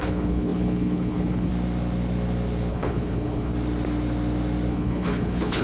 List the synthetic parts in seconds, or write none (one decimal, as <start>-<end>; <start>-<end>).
0.0-1.5; 2.7-3.5; 4.7-5.6